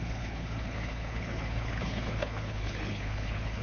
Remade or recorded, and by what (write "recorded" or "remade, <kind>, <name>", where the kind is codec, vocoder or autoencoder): remade, codec, HILCodec